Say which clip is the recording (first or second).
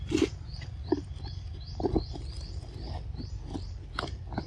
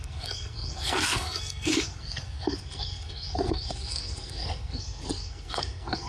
first